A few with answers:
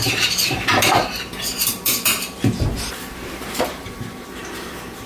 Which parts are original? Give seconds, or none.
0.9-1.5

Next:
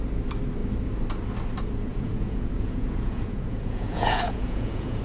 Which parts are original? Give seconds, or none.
0.0-1.9

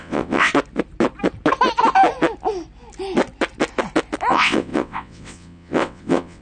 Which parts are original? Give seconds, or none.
0.5-4.3